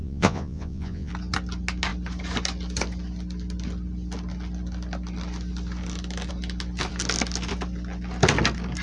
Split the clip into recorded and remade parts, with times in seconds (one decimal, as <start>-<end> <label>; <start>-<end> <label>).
0.0-1.1 remade; 1.1-8.8 recorded